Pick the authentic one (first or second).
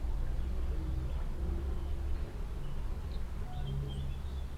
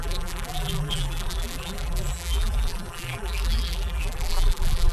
first